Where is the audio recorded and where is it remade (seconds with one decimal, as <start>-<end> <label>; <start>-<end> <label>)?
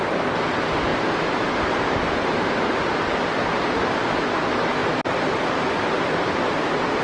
0.0-4.8 recorded; 4.8-6.4 remade; 6.4-7.0 recorded